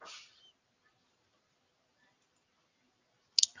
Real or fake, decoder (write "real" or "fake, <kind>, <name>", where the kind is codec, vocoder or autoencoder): real